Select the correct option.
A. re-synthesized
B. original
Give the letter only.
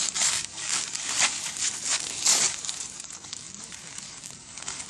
A